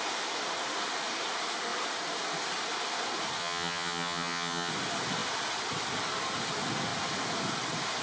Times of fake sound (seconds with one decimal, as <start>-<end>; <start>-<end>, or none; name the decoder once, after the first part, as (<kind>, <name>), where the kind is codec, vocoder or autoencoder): 3.4-4.7 (vocoder, HiFi-GAN)